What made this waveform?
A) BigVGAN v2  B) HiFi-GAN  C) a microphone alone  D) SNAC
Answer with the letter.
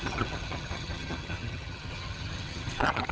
B